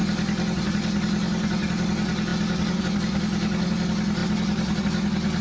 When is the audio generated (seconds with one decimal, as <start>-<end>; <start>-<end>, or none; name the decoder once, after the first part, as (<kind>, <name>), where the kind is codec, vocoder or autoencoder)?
none